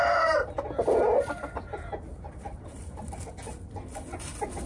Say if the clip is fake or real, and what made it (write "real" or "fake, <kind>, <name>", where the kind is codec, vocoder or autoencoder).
real